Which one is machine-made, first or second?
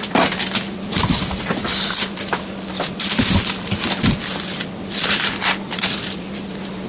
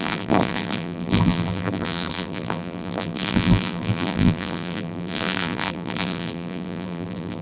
second